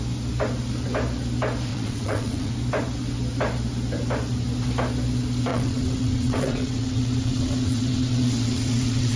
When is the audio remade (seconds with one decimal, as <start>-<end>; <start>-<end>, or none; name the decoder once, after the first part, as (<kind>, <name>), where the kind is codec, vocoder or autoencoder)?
1.7-2.5 (vocoder, WaveNeXt); 5.5-9.2